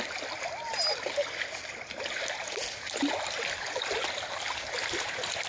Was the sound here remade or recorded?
recorded